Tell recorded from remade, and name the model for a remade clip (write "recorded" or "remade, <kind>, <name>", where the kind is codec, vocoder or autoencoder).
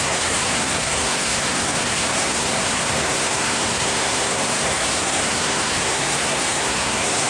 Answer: remade, codec, SNAC